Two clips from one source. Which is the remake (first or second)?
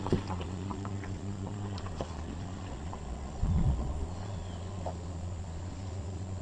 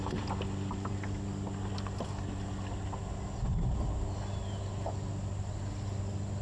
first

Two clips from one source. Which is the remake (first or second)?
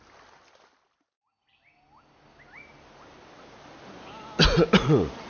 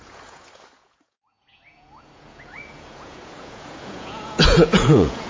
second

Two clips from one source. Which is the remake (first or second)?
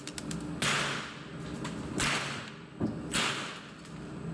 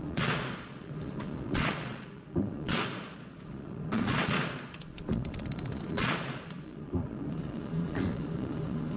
second